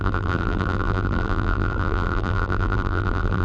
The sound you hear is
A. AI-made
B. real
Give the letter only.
A